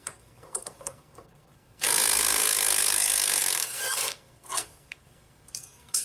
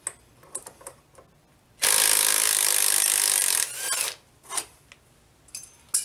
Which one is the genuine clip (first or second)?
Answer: second